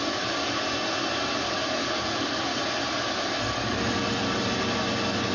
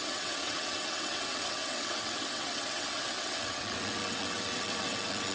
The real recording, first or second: first